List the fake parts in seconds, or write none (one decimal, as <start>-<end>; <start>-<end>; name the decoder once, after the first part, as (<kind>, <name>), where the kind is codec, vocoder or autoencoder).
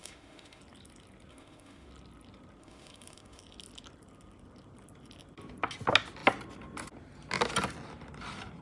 0.0-0.6 (autoencoder, DAC-VAE); 1.3-1.9; 2.6-3.4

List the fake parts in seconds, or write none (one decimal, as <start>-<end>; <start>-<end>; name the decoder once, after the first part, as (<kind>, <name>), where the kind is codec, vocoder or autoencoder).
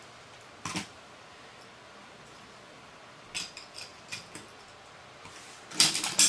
none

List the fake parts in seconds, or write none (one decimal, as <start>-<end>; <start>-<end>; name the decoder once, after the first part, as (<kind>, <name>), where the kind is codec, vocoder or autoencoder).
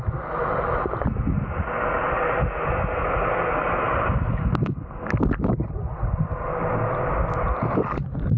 none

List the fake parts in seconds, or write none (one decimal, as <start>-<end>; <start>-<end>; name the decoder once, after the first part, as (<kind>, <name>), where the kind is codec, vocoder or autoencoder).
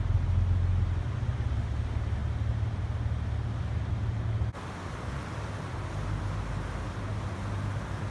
none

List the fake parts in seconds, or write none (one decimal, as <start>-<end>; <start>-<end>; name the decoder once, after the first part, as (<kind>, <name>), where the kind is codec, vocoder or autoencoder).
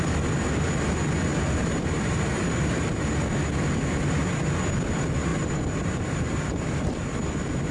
1.6-3.0 (vocoder, BigVGAN v2); 5.3-6.8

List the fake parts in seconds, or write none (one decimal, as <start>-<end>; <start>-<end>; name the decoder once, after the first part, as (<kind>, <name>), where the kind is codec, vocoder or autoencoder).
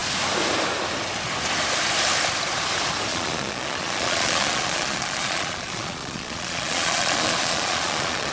3.1-8.3 (vocoder, Vocos)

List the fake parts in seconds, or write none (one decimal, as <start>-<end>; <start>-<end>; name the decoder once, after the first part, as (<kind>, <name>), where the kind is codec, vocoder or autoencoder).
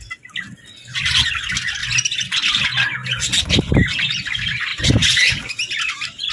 1.8-2.6 (vocoder, BigVGAN v2); 4.7-6.3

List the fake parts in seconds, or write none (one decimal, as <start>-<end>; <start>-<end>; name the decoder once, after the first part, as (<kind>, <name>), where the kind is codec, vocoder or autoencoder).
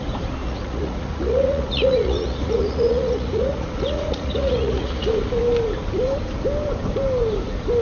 0.4-5.1 (vocoder, Vocos)